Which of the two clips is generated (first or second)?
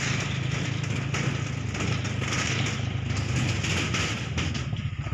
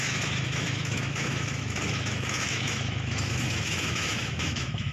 second